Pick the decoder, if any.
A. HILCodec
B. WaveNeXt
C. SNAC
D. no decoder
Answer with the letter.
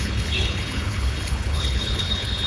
A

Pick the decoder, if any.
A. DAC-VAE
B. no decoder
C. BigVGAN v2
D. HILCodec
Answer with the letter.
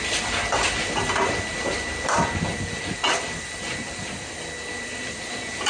B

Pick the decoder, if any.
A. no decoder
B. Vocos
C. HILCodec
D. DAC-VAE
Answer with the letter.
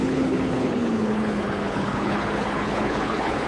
C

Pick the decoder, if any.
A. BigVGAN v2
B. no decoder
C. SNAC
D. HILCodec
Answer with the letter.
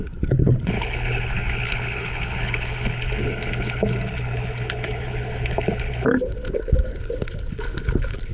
D